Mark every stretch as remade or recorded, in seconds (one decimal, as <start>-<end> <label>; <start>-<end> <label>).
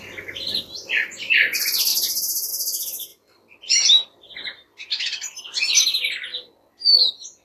0.0-7.4 recorded